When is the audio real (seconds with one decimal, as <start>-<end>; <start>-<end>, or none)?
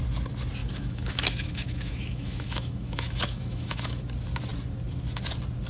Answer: 0.0-0.6; 4.0-5.7